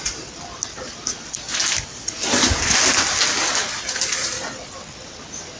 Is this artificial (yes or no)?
no